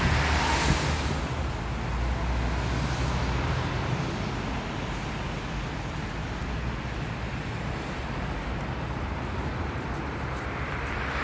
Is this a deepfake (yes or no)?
no